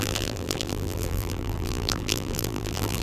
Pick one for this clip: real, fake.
fake